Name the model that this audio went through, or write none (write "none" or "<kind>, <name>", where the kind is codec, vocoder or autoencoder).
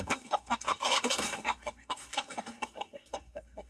codec, SNAC